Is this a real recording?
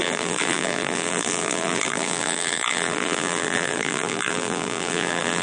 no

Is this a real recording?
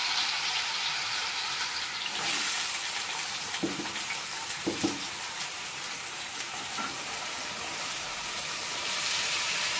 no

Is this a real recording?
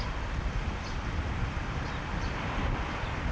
no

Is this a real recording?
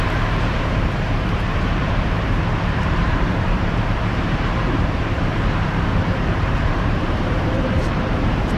no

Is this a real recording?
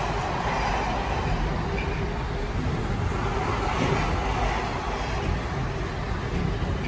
yes